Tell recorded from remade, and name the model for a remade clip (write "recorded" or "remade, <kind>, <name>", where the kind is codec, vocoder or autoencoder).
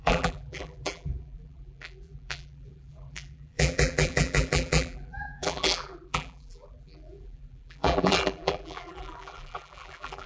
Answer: remade, vocoder, BigVGAN v2